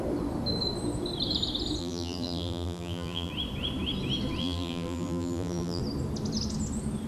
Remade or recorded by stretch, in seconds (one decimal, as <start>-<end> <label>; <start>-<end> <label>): 0.0-1.8 recorded; 1.8-3.3 remade; 3.3-4.4 recorded; 4.4-5.8 remade; 5.8-7.1 recorded